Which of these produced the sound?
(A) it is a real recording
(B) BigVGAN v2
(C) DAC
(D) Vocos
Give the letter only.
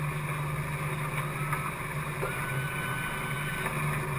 A